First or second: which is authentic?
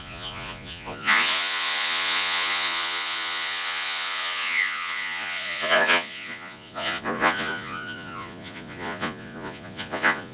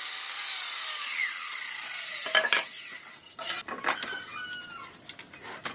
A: second